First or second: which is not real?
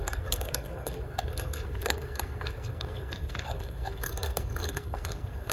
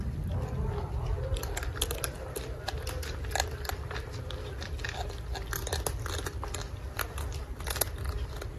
first